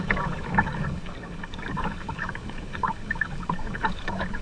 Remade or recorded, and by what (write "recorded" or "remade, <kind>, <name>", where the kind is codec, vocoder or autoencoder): remade, codec, DAC